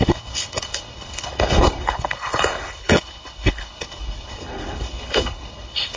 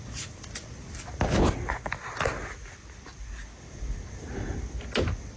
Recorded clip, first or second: second